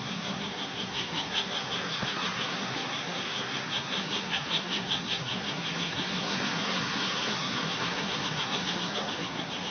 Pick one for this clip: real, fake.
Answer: fake